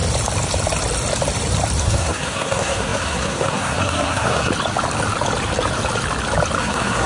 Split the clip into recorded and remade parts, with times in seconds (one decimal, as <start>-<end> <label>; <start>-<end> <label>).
0.0-1.8 recorded; 1.8-4.5 remade; 4.5-6.6 recorded; 6.6-7.1 remade